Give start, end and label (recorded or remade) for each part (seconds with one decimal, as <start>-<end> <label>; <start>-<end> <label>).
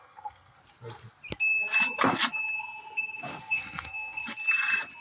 0.0-0.6 remade; 0.6-3.4 recorded; 3.4-4.2 remade; 4.2-5.0 recorded